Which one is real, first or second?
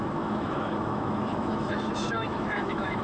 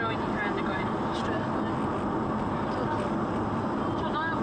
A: second